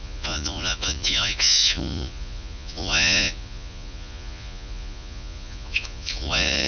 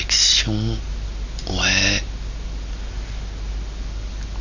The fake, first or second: first